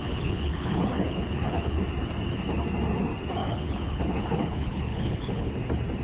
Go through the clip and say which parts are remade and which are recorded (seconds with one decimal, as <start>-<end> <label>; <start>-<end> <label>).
0.0-1.8 remade; 1.8-3.4 recorded; 3.4-5.5 remade; 5.5-6.0 recorded